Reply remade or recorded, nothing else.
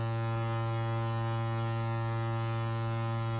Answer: recorded